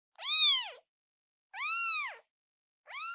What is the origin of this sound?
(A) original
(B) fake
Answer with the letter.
A